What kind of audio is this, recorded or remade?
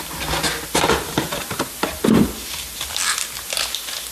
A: recorded